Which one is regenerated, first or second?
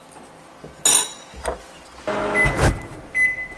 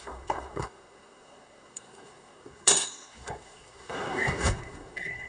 second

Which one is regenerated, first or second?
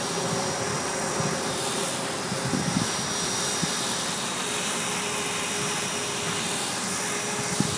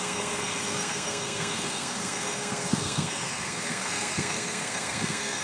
second